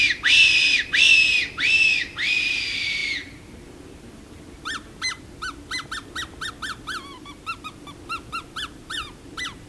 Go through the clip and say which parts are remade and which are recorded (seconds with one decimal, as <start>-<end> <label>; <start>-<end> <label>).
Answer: 0.0-7.1 recorded; 7.1-7.7 remade; 7.7-8.8 recorded; 8.8-9.7 remade